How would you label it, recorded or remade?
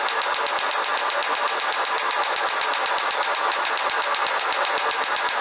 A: recorded